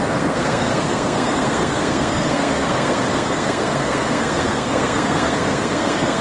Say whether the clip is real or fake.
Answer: fake